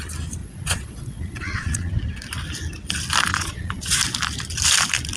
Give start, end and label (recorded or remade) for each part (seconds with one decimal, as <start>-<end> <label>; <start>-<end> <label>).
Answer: 0.0-0.4 recorded; 0.4-1.9 remade; 1.9-3.3 recorded; 3.3-4.0 remade; 4.0-5.2 recorded